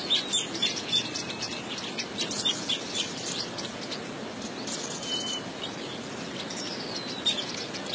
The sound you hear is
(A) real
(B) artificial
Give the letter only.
A